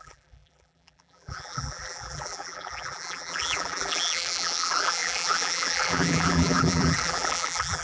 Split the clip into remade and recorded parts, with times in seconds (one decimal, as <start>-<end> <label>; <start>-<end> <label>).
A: 0.0-7.8 remade